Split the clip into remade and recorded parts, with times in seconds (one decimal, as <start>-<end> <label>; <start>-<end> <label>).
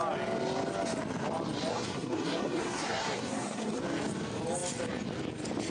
0.0-1.7 recorded; 1.7-3.8 remade; 3.8-5.7 recorded